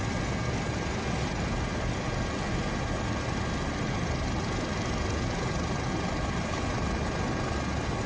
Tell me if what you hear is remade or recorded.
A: recorded